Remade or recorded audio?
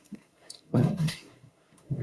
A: remade